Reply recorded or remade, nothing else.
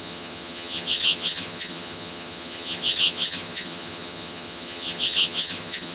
remade